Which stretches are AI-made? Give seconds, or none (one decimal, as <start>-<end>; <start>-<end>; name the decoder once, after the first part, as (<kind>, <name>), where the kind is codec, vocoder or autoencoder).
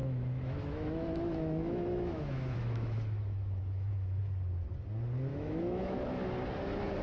0.0-4.2 (autoencoder, DAC-VAE); 5.3-6.0